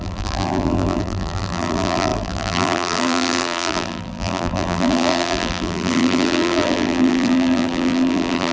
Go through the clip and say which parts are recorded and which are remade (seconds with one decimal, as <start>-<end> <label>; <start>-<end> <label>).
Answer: 0.0-8.5 remade